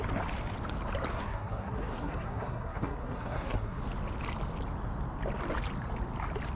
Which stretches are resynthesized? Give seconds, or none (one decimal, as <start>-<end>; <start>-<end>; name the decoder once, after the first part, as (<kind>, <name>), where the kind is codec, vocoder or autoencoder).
1.1-3.8 (codec, SNAC)